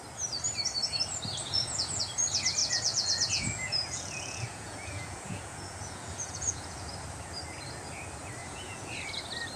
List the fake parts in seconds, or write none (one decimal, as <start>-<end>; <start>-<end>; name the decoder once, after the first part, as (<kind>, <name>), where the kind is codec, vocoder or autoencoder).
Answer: 1.4-2.0 (vocoder, Vocos); 2.6-6.9; 8.4-9.2